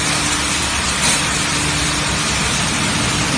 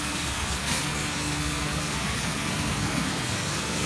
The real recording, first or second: first